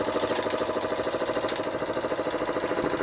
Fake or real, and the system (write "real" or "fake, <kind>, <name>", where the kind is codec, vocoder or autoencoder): real